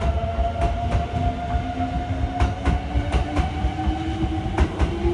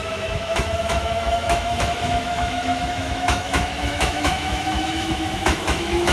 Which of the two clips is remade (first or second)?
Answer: second